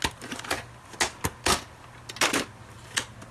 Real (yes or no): yes